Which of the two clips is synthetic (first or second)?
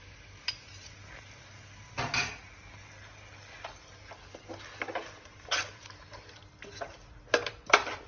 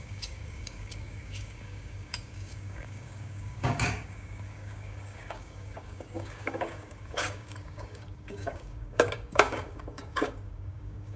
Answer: second